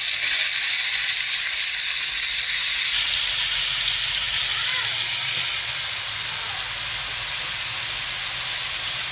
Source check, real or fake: real